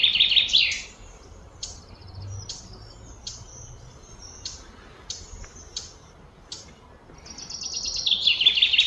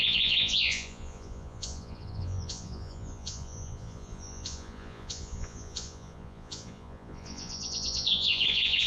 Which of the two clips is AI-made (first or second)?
second